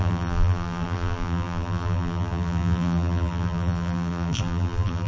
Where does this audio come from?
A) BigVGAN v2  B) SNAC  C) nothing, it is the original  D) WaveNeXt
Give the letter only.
A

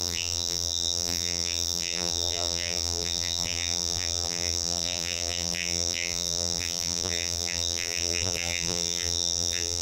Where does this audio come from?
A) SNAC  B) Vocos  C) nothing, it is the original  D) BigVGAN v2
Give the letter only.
D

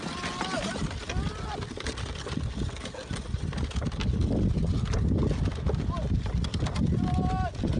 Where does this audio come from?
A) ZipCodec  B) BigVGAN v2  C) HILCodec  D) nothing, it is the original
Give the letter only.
D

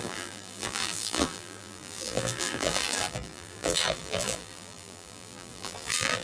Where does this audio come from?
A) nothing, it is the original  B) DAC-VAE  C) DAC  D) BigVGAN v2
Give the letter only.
D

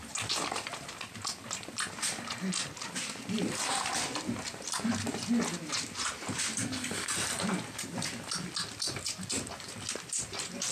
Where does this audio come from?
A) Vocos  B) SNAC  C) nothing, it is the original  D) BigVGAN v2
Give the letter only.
C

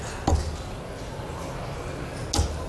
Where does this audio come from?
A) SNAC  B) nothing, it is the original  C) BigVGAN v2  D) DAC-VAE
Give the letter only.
B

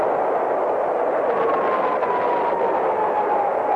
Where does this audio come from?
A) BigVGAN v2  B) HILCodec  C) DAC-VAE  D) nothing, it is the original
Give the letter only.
D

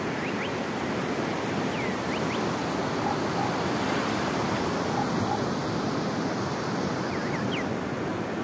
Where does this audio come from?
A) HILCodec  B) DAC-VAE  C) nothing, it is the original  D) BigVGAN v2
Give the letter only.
C